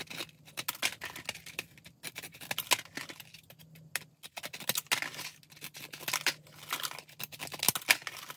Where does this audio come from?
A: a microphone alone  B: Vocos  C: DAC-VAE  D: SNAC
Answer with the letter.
A